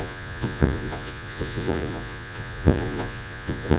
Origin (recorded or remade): remade